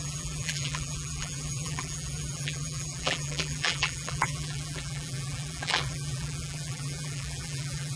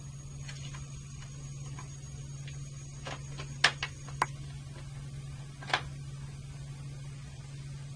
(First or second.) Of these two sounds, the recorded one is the second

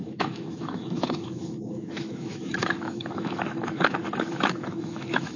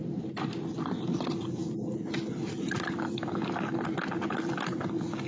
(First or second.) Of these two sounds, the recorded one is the second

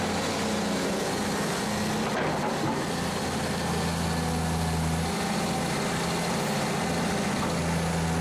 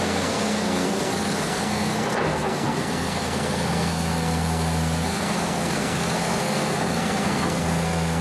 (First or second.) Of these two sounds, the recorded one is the first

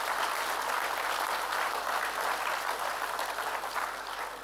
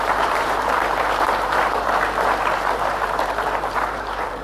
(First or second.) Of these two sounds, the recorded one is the first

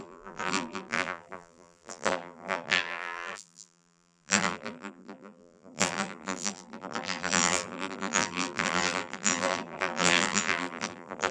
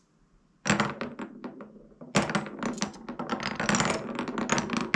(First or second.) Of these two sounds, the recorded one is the second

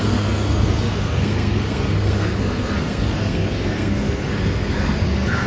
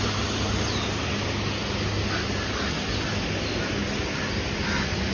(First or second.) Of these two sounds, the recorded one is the second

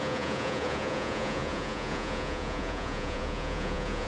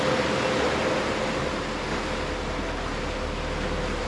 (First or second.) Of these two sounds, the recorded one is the second